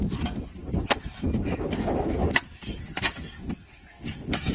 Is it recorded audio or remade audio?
recorded